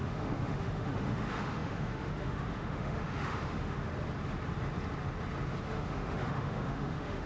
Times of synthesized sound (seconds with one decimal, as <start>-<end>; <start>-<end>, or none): 0.0-3.9; 5.6-7.3